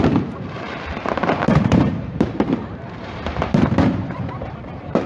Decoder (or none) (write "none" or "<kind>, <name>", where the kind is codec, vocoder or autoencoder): vocoder, BigVGAN v2